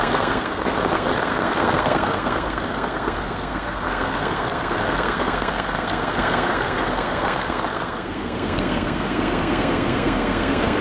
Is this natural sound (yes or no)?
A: no